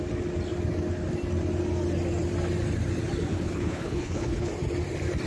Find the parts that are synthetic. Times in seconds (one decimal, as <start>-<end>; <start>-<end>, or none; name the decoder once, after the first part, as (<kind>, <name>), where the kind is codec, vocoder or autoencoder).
3.3-4.5 (codec, HILCodec)